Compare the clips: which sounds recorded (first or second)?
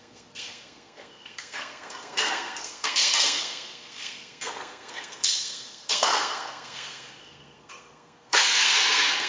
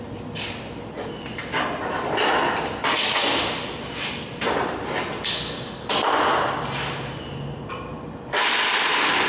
second